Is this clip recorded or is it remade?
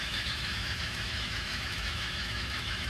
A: remade